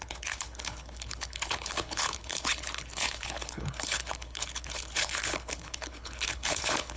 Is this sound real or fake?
fake